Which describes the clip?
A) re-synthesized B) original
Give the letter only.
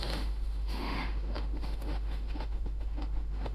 A